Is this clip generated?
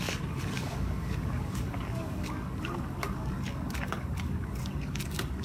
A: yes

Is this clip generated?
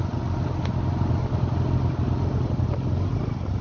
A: no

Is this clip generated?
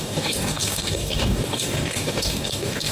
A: yes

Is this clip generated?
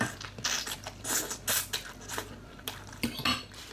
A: no